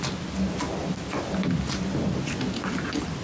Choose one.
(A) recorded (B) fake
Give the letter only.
A